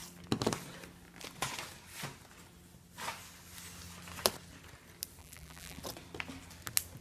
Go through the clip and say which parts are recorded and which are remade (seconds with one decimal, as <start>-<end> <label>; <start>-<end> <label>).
0.0-5.2 recorded; 5.2-5.8 remade; 5.8-7.0 recorded